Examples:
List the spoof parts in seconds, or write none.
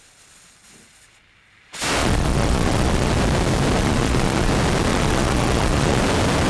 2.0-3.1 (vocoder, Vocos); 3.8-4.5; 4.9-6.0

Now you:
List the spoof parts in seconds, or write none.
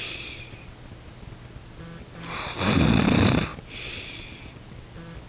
none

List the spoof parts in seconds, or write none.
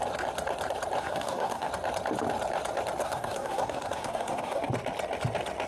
1.0-1.7 (codec, SNAC); 3.0-4.7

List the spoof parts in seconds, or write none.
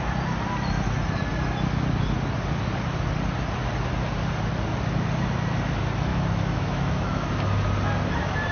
6.1-7.3 (autoencoder, DAC-VAE)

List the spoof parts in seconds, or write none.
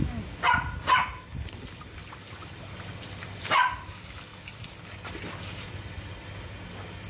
none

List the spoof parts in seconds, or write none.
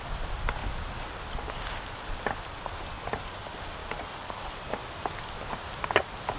none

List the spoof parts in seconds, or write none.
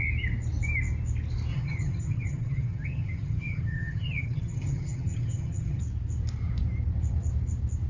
1.5-5.8 (vocoder, HiFi-GAN)